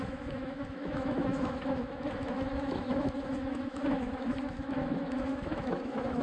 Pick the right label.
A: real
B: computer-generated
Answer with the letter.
B